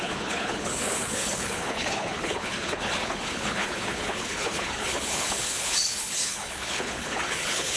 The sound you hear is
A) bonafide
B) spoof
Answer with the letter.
B